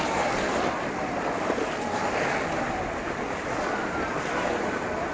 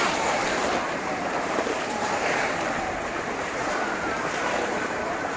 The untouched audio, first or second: first